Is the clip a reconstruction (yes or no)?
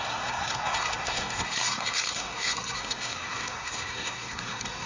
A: yes